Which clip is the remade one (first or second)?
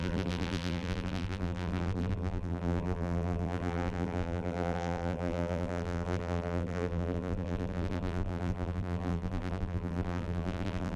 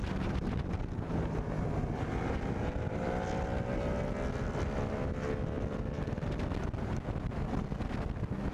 first